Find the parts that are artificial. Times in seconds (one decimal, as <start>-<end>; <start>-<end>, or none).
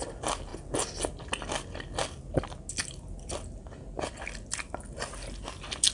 none